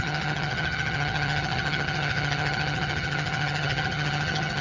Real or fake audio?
fake